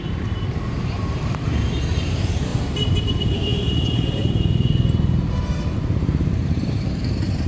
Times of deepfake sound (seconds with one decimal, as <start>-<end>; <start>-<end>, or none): 0.0-2.5; 3.0-4.2; 5.3-7.5

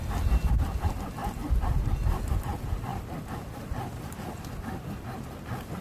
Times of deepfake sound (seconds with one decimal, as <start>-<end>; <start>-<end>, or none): none

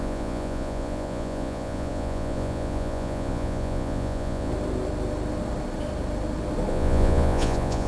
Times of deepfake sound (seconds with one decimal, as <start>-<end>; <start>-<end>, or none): 0.0-4.5; 6.7-7.9